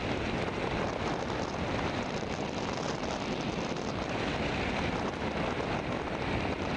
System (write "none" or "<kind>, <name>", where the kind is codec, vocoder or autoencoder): none